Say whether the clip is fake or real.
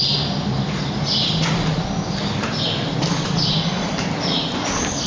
real